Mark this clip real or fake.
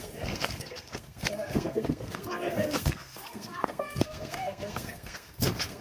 fake